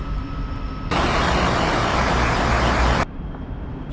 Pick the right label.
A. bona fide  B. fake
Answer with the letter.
A